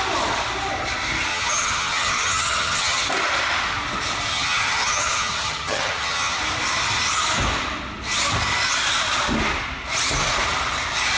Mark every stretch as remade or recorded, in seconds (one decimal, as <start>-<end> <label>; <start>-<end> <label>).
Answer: 0.0-1.3 recorded; 1.3-3.0 remade; 3.0-4.3 recorded; 4.3-6.4 remade; 6.4-11.2 recorded